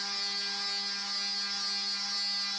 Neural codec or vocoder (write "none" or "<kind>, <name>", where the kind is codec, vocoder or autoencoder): none